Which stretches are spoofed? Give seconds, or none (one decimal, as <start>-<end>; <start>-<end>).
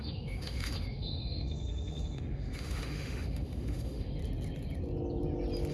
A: 0.0-4.2